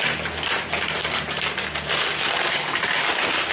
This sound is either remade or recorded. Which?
recorded